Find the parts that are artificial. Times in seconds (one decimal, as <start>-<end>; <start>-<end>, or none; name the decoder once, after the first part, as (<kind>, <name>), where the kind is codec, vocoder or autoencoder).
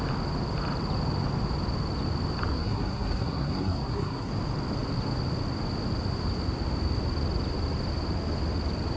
2.5-4.3 (codec, SNAC)